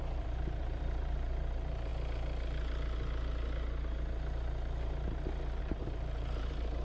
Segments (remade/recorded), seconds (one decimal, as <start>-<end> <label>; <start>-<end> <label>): 0.0-1.9 remade; 1.9-5.6 recorded; 5.6-6.8 remade